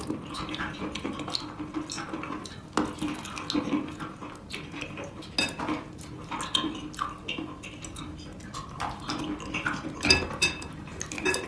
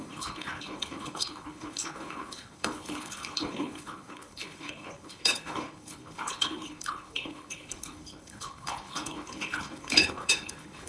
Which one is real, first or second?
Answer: first